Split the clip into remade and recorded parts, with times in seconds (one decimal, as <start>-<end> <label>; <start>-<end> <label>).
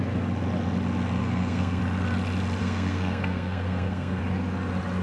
0.0-1.2 recorded; 1.2-1.8 remade; 1.8-2.6 recorded; 2.6-4.2 remade; 4.2-5.0 recorded